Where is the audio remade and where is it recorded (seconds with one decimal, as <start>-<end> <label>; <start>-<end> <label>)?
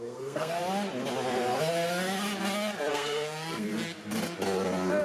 0.0-0.6 remade; 0.6-2.9 recorded; 2.9-3.7 remade; 3.7-5.0 recorded